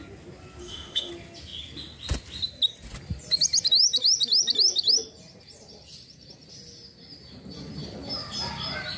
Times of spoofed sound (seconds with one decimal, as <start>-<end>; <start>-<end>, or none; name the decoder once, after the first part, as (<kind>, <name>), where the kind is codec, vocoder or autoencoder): 0.6-1.1 (autoencoder, DAC-VAE)